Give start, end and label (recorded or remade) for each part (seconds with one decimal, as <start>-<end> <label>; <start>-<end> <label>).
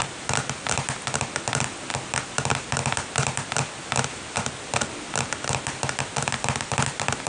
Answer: 0.0-7.3 recorded